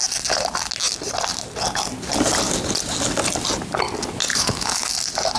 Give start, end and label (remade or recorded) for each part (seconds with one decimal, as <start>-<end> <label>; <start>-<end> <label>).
0.0-4.3 recorded; 4.3-4.9 remade; 4.9-5.4 recorded